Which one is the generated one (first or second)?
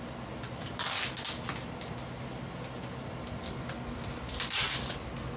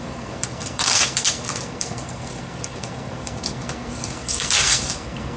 second